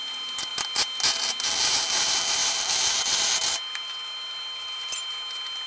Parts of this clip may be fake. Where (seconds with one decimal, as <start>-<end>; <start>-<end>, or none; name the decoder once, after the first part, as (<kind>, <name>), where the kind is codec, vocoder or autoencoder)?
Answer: 2.4-5.1 (vocoder, BigVGAN v2)